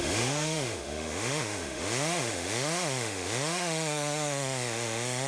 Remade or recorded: remade